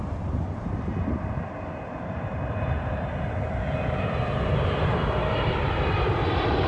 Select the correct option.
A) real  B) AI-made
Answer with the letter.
B